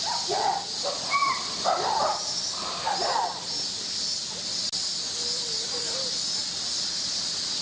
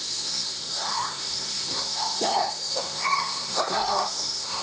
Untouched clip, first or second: first